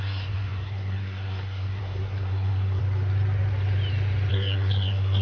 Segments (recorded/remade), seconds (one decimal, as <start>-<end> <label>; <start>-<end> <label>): 0.0-2.8 remade; 2.8-4.3 recorded; 4.3-5.2 remade